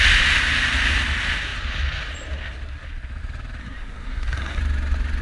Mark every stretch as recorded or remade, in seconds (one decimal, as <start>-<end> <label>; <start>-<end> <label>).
0.0-3.6 recorded; 3.6-4.6 remade; 4.6-5.2 recorded